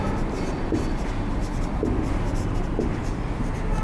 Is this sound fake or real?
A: real